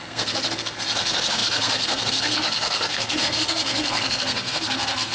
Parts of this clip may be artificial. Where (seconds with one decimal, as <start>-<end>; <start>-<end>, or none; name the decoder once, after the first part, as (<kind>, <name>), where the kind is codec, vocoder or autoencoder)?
0.0-5.1 (codec, SNAC)